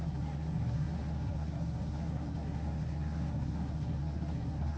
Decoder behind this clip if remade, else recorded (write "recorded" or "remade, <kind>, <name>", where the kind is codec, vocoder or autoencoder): remade, codec, SNAC